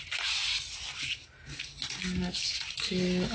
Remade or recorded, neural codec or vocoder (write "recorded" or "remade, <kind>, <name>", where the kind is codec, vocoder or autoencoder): recorded